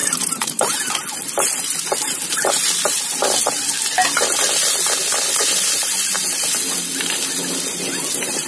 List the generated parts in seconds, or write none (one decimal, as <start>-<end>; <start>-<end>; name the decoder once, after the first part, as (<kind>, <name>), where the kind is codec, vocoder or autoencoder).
0.0-0.9 (vocoder, BigVGAN v2)